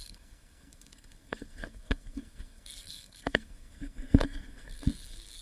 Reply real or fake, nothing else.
fake